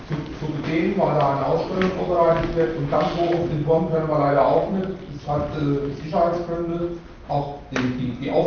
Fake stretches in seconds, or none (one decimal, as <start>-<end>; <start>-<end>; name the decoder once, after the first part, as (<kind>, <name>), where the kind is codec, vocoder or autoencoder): 1.4-2.0 (vocoder, Vocos)